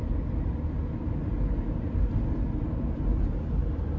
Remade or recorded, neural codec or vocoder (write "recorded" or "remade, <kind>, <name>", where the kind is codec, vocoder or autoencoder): recorded